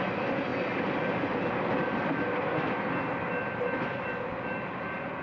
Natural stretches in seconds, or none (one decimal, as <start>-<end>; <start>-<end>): 0.0-5.2